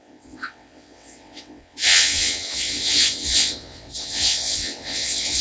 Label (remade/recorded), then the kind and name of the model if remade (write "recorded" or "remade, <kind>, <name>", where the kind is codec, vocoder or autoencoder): remade, vocoder, WaveNeXt